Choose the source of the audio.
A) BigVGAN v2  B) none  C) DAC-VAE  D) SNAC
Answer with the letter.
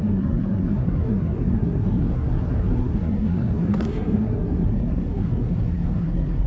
D